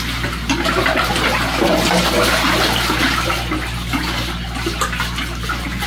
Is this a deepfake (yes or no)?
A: no